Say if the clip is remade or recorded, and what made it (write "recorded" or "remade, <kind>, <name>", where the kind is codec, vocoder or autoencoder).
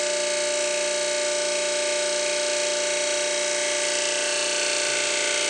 recorded